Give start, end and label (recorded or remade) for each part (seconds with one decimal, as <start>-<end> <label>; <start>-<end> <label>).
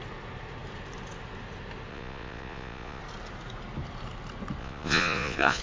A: 0.0-1.9 recorded; 1.9-3.0 remade; 3.0-4.6 recorded; 4.6-5.6 remade